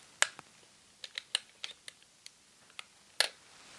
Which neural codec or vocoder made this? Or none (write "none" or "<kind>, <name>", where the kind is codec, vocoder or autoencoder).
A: none